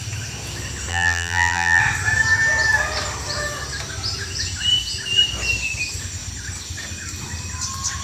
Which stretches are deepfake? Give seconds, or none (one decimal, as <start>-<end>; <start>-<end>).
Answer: 0.9-1.8